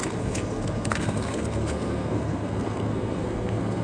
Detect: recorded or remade remade